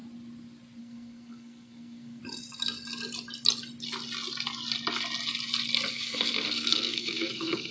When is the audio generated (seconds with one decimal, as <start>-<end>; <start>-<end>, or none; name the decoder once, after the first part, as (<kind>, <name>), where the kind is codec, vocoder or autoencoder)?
0.8-2.2 (codec, SNAC); 5.9-7.7